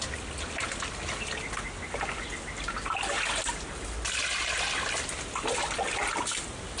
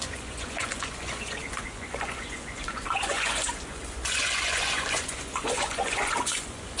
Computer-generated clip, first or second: second